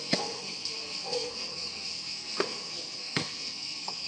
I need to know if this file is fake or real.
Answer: fake